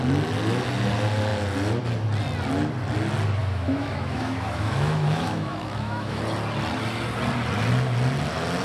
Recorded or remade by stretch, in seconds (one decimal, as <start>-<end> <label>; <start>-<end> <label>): 0.0-3.4 recorded; 3.4-6.2 remade; 6.2-8.6 recorded